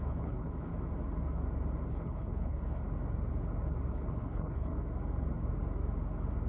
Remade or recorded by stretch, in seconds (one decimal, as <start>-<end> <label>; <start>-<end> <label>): 0.0-0.7 remade; 0.7-1.9 recorded; 1.9-2.8 remade; 2.8-3.9 recorded; 3.9-4.7 remade; 4.7-6.5 recorded